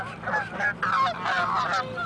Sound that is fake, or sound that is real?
real